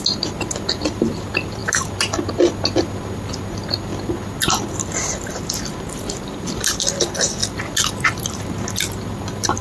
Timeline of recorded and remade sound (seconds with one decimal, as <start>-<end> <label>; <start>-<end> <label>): 0.0-9.6 recorded